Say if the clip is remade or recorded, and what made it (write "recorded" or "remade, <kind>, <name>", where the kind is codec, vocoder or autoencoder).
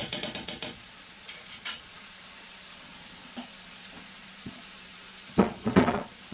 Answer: remade, vocoder, Vocos